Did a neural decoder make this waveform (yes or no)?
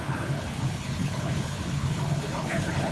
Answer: yes